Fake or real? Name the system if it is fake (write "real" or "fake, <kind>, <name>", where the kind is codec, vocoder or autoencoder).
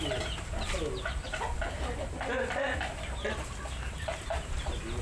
real